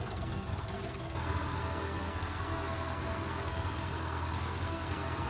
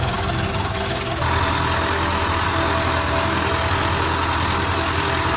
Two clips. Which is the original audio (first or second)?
second